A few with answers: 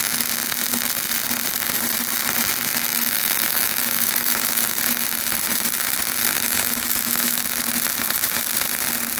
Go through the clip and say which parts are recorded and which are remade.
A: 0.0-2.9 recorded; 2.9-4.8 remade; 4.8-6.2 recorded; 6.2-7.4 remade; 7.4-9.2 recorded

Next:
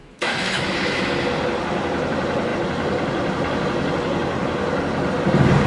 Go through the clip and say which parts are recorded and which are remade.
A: 0.0-1.0 remade; 1.0-5.7 recorded